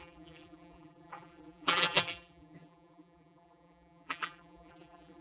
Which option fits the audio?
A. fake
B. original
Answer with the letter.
A